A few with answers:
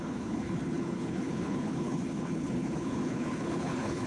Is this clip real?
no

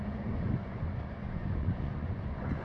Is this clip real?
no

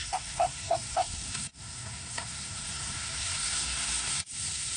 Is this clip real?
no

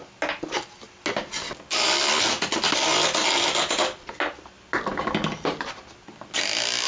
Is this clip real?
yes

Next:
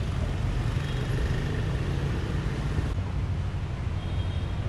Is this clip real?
yes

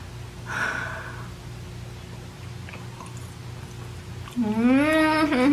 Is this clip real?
yes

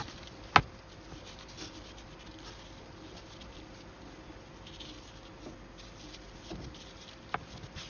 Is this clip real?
yes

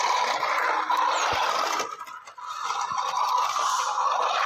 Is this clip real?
yes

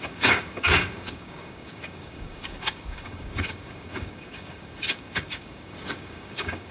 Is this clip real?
no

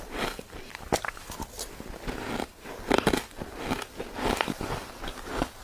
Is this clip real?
yes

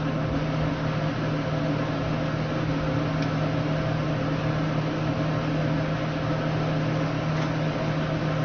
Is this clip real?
yes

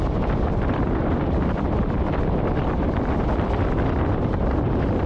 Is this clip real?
no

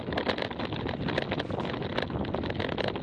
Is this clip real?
yes